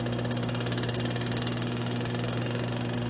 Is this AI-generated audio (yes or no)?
no